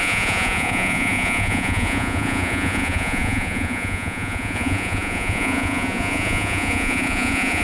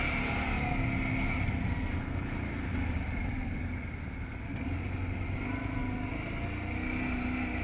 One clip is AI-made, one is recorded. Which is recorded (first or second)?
second